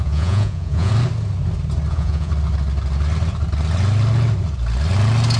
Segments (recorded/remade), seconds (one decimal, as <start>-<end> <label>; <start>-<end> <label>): 0.0-0.9 remade; 0.9-1.9 recorded; 1.9-2.3 remade; 2.3-5.4 recorded